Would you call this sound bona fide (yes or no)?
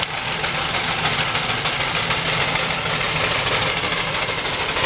yes